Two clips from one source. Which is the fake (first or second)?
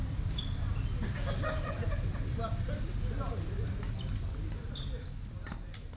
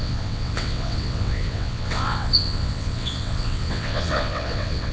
second